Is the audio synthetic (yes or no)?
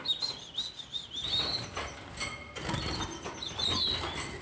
no